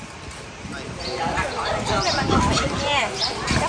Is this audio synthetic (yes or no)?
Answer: no